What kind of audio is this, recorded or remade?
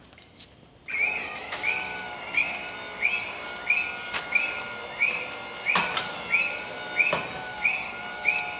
recorded